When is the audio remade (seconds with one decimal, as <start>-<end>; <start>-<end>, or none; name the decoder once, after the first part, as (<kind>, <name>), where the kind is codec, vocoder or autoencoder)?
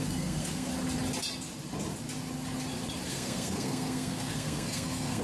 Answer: 0.0-0.7 (codec, SNAC); 3.1-5.2